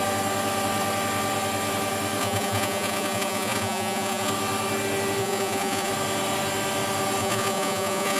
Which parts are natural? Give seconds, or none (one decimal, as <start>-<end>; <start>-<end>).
0.0-2.2; 4.3-5.2; 5.9-7.2